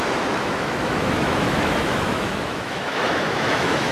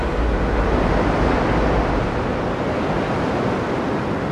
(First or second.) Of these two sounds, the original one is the second